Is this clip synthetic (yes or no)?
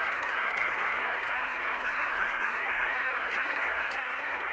yes